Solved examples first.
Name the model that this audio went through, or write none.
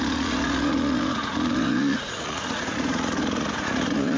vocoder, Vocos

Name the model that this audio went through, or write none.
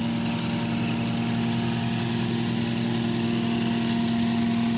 none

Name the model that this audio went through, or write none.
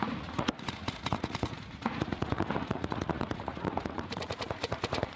vocoder, Vocos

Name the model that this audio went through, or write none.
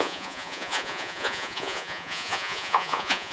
vocoder, Vocos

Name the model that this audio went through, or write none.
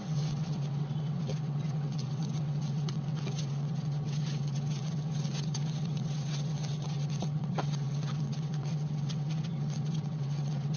vocoder, WaveNeXt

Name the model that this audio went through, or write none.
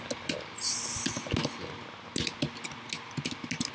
none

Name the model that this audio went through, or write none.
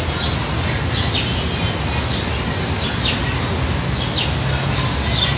none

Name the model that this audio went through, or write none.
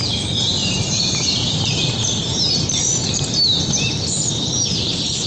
vocoder, BigVGAN v2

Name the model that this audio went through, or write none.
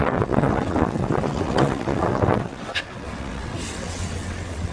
vocoder, WaveNeXt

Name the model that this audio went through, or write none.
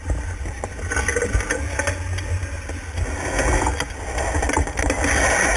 none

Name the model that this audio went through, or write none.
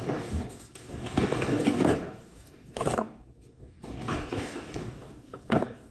codec, DAC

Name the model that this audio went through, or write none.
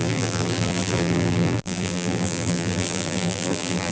vocoder, BigVGAN v2